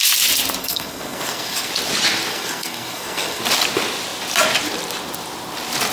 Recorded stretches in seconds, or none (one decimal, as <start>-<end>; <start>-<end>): 0.0-0.6; 1.7-2.3; 3.4-5.9